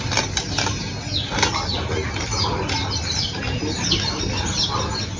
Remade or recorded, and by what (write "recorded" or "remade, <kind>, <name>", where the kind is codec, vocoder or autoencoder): recorded